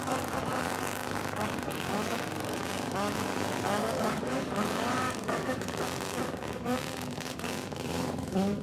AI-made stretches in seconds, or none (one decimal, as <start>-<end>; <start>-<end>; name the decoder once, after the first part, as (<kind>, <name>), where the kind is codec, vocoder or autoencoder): 0.0-8.6 (codec, DAC)